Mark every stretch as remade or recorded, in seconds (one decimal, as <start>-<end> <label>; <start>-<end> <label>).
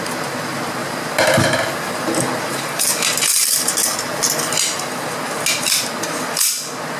0.0-0.8 recorded; 0.8-2.6 remade; 2.6-7.0 recorded